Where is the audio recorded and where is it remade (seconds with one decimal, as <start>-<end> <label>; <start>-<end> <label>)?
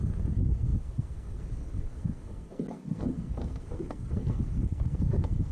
0.0-5.5 remade